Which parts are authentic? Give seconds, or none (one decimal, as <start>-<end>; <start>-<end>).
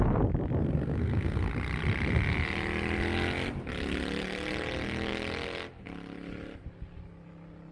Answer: 0.0-0.6; 1.5-7.7